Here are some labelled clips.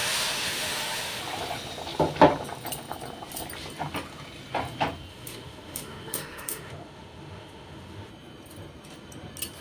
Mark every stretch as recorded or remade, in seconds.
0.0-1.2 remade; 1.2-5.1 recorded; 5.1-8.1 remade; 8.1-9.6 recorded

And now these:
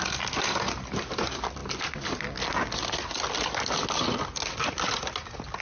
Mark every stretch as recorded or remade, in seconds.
0.0-5.6 recorded

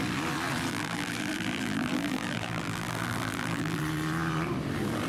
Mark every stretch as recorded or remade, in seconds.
0.0-0.7 recorded; 0.7-3.8 remade; 3.8-5.1 recorded

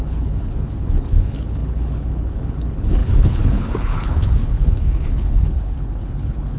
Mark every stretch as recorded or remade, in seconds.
0.0-6.6 remade

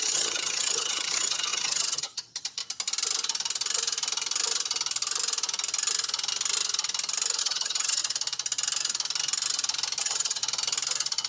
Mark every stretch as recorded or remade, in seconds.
0.0-2.6 remade; 2.6-7.4 recorded; 7.4-8.0 remade; 8.0-10.0 recorded; 10.0-10.4 remade; 10.4-11.3 recorded

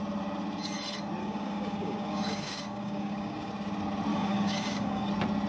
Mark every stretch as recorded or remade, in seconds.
0.0-1.2 recorded; 1.2-3.5 remade; 3.5-4.1 recorded; 4.1-5.1 remade; 5.1-5.5 recorded

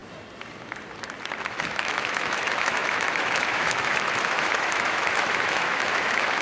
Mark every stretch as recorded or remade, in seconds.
0.0-1.5 recorded; 1.5-6.4 remade

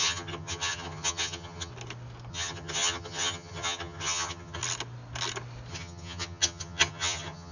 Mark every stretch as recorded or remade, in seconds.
0.0-1.7 remade; 1.7-2.3 recorded; 2.3-4.6 remade; 4.6-5.7 recorded; 5.7-7.5 remade